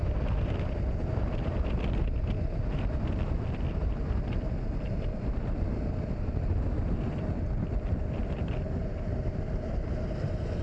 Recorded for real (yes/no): yes